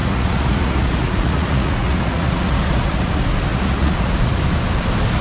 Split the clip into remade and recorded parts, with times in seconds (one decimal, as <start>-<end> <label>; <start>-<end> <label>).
0.0-3.1 remade; 3.1-3.5 recorded; 3.5-4.4 remade; 4.4-5.2 recorded